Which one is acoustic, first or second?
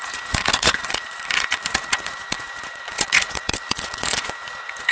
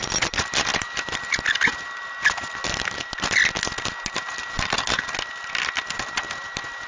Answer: second